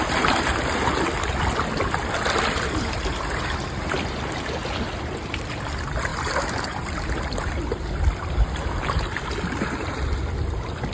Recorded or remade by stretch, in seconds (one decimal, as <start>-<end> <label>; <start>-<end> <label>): 0.0-10.9 recorded